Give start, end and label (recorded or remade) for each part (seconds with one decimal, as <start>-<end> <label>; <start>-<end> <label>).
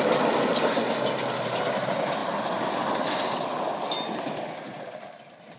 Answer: 0.0-5.6 recorded